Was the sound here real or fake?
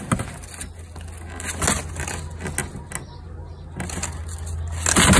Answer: real